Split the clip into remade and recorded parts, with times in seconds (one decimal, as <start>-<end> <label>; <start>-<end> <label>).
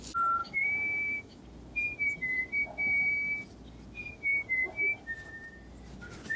0.0-0.4 recorded; 0.4-1.4 remade; 1.4-6.4 recorded